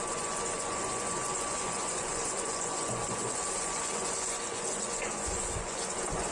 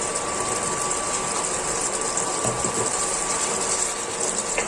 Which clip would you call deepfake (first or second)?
first